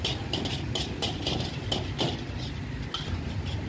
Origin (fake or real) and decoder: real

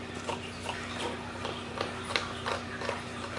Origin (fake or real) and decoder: real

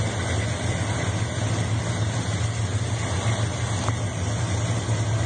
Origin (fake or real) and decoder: real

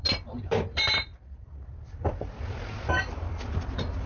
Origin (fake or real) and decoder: fake, vocoder, BigVGAN v2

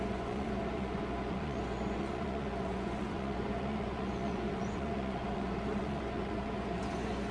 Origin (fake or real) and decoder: fake, vocoder, Vocos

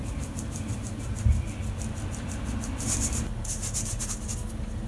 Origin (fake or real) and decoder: real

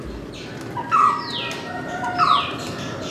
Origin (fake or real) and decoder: real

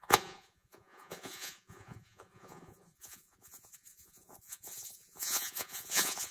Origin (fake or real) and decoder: fake, vocoder, Vocos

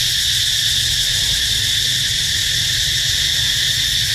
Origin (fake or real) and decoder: real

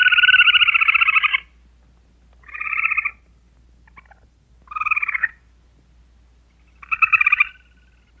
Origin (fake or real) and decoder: real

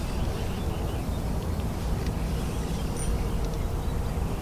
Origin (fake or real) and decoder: real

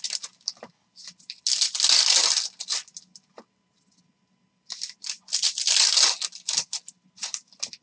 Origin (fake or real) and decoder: real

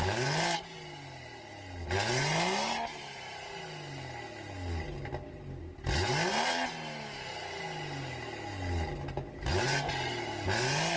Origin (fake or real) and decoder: real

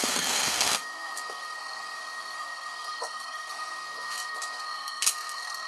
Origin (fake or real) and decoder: fake, codec, SNAC